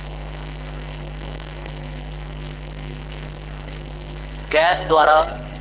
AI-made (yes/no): yes